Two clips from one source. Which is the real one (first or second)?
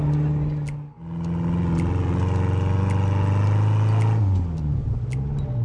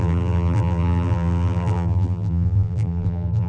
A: first